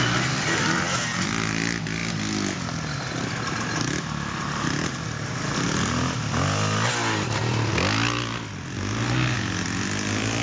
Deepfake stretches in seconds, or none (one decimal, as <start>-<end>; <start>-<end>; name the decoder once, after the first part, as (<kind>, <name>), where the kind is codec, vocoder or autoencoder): none